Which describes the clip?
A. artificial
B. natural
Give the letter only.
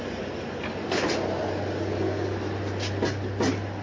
B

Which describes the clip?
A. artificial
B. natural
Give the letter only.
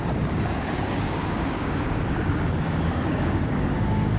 A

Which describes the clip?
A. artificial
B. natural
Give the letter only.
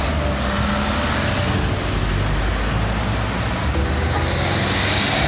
B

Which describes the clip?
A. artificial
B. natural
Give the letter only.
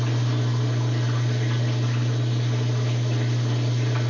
B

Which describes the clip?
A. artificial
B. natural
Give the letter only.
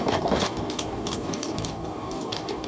A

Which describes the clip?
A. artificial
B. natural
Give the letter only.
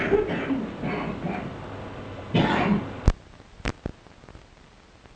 B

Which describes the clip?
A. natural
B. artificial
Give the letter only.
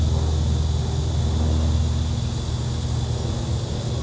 A